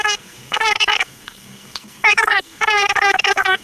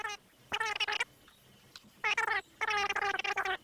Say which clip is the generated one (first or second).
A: first